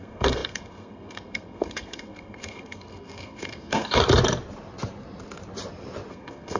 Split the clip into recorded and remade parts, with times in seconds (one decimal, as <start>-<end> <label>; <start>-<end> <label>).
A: 0.0-4.0 remade; 4.0-6.1 recorded; 6.1-6.6 remade

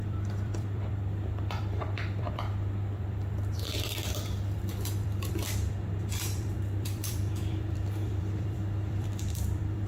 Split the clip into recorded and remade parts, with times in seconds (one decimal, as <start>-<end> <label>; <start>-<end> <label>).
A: 0.0-9.9 remade

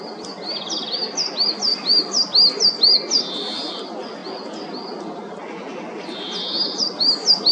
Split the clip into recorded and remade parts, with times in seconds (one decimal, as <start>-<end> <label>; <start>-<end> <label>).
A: 0.0-7.5 recorded

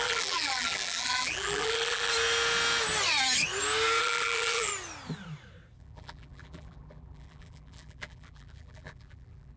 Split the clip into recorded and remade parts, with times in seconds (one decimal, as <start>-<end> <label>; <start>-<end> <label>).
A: 0.0-2.1 remade; 2.1-4.0 recorded; 4.0-4.7 remade; 4.7-5.8 recorded; 5.8-9.6 remade

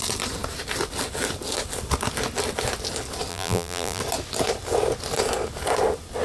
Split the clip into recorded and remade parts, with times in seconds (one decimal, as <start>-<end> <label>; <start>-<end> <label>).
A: 0.0-3.3 recorded; 3.3-4.0 remade; 4.0-6.2 recorded

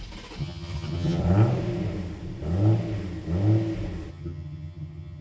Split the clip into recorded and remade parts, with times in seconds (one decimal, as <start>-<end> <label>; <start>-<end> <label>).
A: 0.0-0.4 recorded; 0.4-1.2 remade; 1.2-4.1 recorded; 4.1-5.2 remade

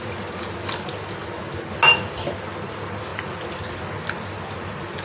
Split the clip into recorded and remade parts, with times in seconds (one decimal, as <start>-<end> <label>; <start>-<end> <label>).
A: 0.0-5.0 recorded

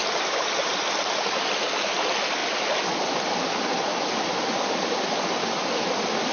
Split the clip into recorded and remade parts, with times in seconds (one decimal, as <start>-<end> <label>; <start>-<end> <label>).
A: 0.0-6.3 recorded